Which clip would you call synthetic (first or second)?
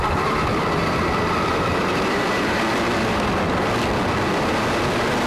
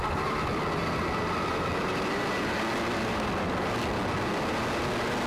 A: first